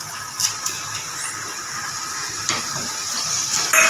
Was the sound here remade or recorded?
recorded